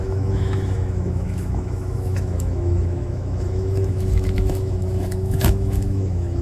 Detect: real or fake fake